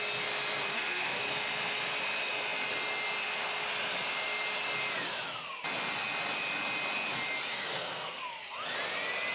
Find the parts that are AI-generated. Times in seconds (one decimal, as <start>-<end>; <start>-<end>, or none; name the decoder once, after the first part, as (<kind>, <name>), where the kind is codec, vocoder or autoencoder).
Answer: 0.7-1.2 (codec, SNAC); 7.5-8.2